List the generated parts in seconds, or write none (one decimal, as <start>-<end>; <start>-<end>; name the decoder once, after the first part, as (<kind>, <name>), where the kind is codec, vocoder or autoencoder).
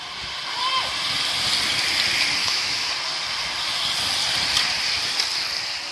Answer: 2.4-2.9 (autoencoder, DAC-VAE)